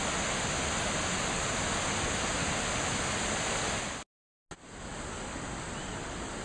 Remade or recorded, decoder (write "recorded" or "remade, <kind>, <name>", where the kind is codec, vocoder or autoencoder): recorded